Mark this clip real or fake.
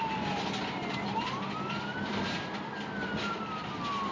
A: real